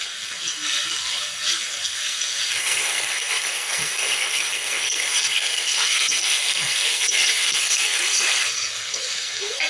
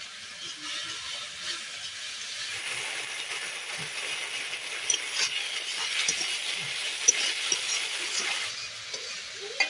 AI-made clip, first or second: first